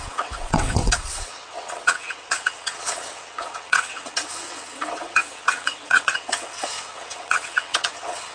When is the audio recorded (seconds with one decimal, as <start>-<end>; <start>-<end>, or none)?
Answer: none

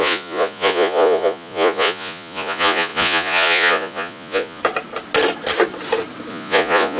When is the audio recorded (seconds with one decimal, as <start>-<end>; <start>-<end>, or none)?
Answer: 4.6-6.3

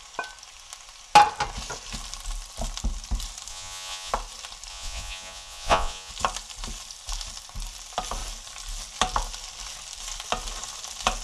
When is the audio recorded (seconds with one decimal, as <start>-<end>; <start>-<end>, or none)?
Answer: 0.0-3.5; 4.1-4.7; 6.1-11.2

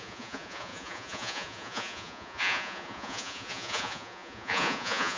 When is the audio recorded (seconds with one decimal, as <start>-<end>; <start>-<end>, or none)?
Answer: none

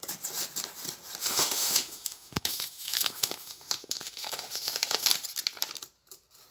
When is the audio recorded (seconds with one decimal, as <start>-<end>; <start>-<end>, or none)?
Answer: 0.0-1.2; 5.1-6.5

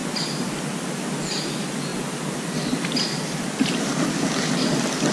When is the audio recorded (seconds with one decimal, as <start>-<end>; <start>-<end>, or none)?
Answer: 0.0-5.1